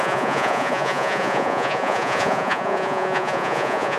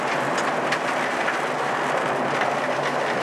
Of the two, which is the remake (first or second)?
first